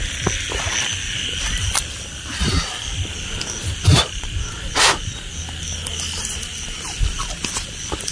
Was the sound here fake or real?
real